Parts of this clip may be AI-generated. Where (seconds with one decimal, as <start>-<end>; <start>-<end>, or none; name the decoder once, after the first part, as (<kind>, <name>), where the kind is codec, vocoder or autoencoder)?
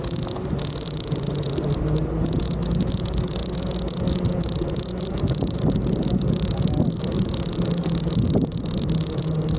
none